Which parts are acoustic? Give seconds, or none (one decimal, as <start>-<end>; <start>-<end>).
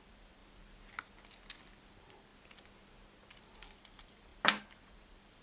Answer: 0.4-1.9; 2.3-3.4